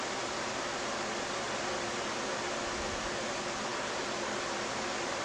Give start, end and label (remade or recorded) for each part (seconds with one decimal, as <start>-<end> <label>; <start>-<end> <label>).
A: 0.0-5.2 recorded